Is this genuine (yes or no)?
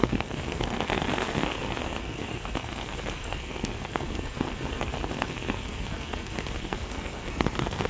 no